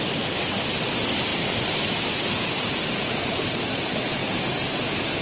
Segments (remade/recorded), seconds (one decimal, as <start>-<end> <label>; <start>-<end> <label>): 0.0-1.3 recorded; 1.3-1.9 remade; 1.9-5.2 recorded

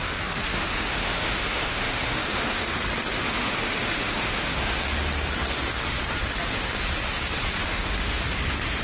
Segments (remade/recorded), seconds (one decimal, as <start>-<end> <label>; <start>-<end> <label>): 0.0-0.5 recorded; 0.5-2.7 remade; 2.7-3.2 recorded; 3.2-4.8 remade; 4.8-7.6 recorded; 7.6-8.2 remade; 8.2-8.8 recorded

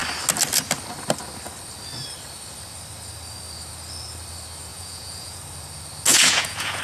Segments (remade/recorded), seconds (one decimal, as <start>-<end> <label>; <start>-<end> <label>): 0.0-4.7 recorded; 4.7-5.4 remade; 5.4-6.1 recorded; 6.1-6.8 remade

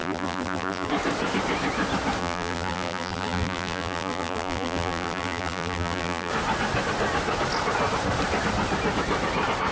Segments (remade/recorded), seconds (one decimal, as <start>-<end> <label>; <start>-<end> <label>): 0.0-0.9 remade; 0.9-2.2 recorded; 2.2-6.3 remade; 6.3-9.7 recorded

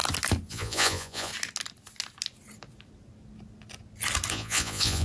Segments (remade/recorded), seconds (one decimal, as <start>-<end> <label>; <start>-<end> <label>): 0.0-0.5 recorded; 0.5-1.3 remade; 1.3-4.3 recorded; 4.3-5.0 remade

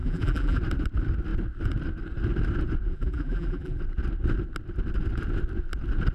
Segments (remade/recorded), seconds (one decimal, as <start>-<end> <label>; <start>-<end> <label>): 0.0-0.6 remade; 0.6-2.9 recorded; 2.9-3.8 remade; 3.8-6.1 recorded

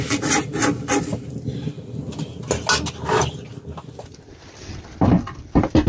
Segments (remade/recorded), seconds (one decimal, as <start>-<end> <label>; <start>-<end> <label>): 0.0-0.5 remade; 0.5-4.0 recorded; 4.0-5.9 remade

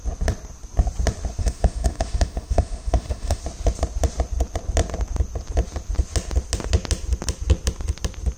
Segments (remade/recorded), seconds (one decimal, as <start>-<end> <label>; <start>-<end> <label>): 0.0-1.4 recorded; 1.4-3.4 remade; 3.4-8.4 recorded